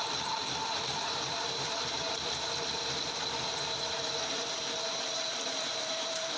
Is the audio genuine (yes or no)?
no